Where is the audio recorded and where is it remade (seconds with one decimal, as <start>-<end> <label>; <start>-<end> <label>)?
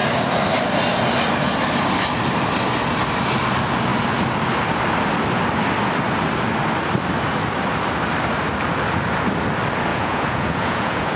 0.0-9.9 recorded; 9.9-11.2 remade